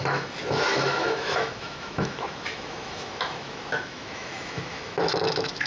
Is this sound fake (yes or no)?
yes